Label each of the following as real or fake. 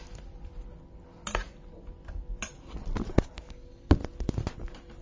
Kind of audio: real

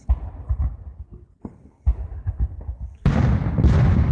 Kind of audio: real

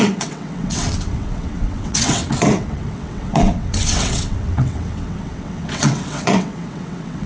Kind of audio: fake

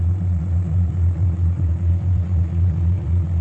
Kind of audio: fake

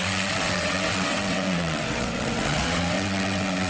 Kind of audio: fake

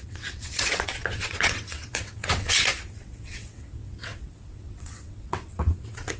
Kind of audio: fake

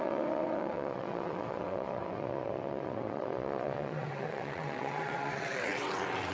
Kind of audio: fake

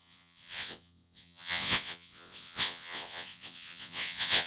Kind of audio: fake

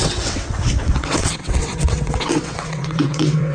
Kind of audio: fake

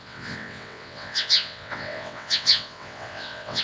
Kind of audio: fake